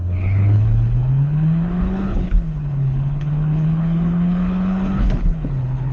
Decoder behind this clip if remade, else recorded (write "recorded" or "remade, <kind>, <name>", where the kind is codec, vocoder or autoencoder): remade, codec, HILCodec